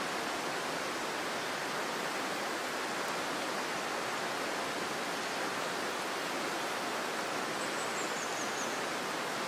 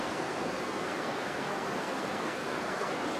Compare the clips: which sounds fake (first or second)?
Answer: second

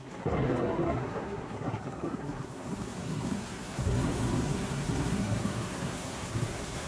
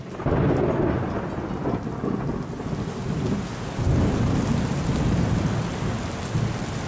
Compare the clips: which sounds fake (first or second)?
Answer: first